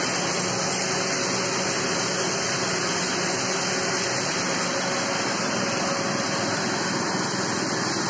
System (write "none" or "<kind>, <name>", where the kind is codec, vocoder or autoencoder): none